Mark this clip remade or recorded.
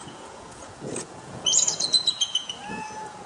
remade